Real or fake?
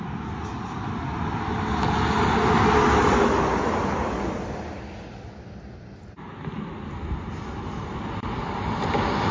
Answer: real